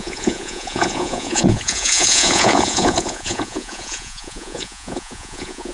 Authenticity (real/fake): fake